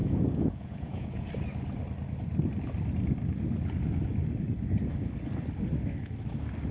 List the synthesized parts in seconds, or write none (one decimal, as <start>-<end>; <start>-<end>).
0.0-1.3